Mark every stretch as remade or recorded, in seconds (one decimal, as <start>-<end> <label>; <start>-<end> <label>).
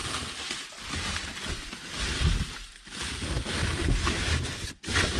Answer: 0.0-5.2 recorded